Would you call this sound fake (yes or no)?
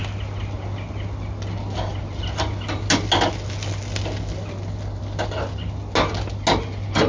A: no